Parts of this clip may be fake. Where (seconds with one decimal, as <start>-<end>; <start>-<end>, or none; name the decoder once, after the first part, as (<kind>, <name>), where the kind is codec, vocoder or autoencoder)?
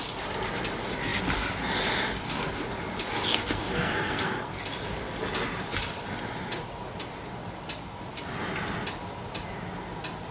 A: 3.3-4.6 (codec, SNAC)